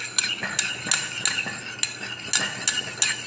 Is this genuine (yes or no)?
yes